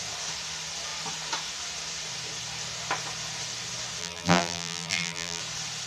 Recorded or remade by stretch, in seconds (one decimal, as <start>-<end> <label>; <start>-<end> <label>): 0.0-4.0 recorded; 4.0-5.4 remade; 5.4-5.9 recorded